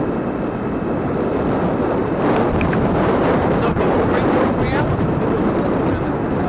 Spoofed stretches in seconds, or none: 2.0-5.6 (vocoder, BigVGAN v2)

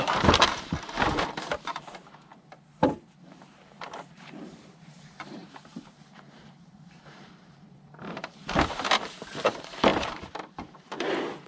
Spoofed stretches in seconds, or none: 0.0-11.5 (vocoder, BigVGAN v2)

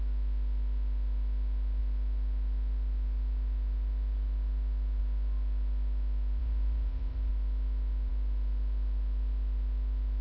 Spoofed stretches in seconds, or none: 6.4-7.3 (vocoder, BigVGAN v2)

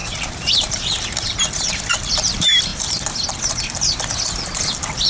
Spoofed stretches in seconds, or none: 0.0-2.7 (vocoder, BigVGAN v2)